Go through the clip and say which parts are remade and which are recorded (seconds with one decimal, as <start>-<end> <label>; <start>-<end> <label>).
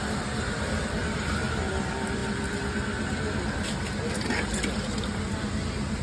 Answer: 0.0-6.0 recorded